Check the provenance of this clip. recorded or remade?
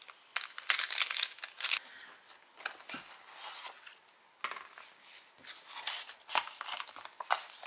recorded